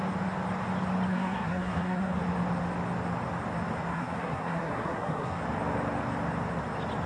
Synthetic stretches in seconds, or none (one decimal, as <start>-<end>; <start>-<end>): 1.1-2.2; 3.9-5.4

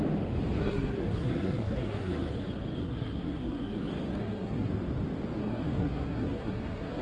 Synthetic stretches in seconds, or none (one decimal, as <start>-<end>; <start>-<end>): 0.6-2.3; 2.8-3.8; 4.2-4.7; 5.4-7.0

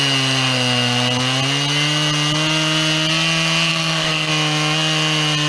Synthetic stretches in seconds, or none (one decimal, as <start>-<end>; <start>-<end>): 3.7-4.3

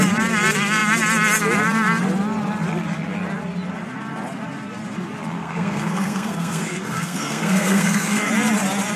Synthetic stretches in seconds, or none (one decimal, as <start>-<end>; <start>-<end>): 5.4-8.3

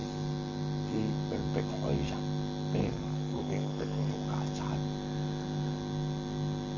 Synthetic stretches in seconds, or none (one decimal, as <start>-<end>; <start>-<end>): 2.8-4.1

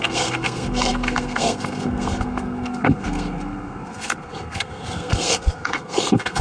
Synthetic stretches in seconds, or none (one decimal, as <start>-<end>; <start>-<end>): 0.0-6.4

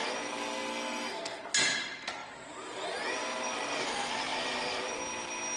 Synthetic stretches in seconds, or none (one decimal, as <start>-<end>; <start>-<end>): 0.7-1.4

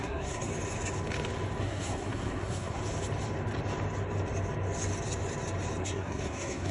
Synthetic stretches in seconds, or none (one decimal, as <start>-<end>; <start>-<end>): 0.0-0.5; 1.6-2.8; 5.8-6.7